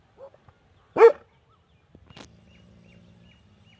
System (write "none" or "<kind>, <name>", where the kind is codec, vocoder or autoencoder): none